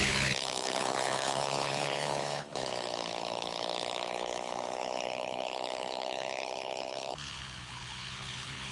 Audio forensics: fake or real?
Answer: fake